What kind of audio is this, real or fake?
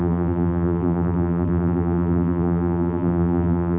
fake